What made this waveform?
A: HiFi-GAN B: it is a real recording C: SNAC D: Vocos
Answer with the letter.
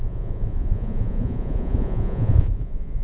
D